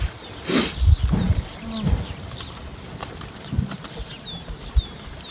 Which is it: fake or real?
real